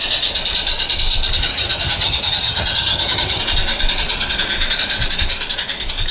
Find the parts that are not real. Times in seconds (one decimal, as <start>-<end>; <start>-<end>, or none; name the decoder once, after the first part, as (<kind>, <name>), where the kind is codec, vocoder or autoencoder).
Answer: 1.5-3.4 (vocoder, HiFi-GAN)